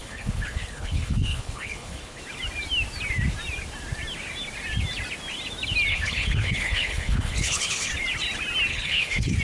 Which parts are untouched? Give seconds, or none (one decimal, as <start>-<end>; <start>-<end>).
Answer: 2.2-5.9; 7.9-8.7